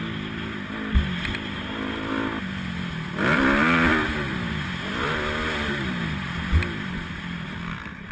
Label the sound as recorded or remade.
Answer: recorded